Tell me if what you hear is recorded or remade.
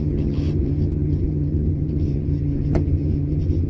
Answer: remade